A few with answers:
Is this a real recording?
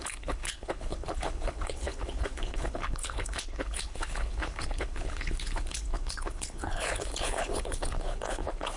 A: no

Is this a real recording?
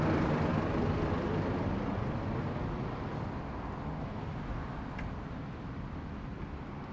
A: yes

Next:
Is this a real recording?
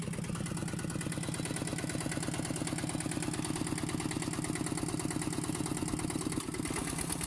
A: yes